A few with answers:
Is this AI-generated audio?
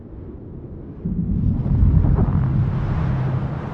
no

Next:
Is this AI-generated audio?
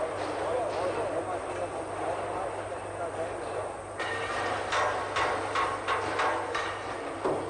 no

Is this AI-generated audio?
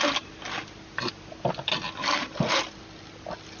no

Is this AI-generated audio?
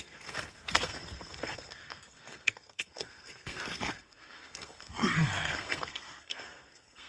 yes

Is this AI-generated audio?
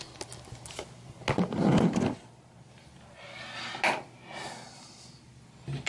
no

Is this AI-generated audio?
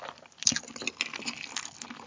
no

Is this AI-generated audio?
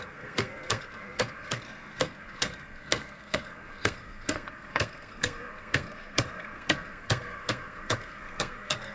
yes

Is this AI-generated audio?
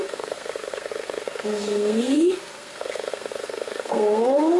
yes